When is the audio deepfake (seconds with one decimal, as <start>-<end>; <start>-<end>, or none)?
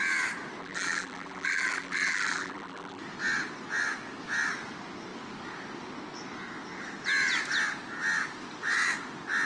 0.6-3.0